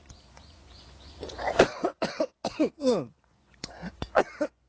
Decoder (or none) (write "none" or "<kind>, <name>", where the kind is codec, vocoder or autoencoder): vocoder, Vocos